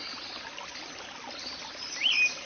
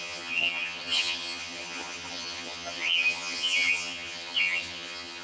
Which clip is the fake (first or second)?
second